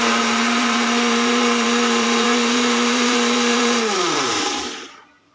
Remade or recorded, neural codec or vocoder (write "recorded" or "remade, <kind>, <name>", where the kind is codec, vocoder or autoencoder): remade, vocoder, BigVGAN v2